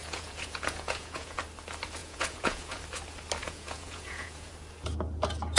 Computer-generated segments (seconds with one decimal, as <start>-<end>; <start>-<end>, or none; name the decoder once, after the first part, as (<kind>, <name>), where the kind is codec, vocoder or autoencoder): 0.0-1.4 (vocoder, Vocos); 2.0-2.8; 3.4-4.5